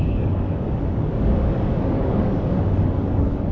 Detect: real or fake fake